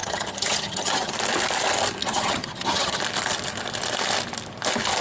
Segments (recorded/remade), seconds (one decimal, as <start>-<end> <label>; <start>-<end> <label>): 0.0-1.1 remade; 1.1-2.0 recorded; 2.0-3.0 remade; 3.0-5.0 recorded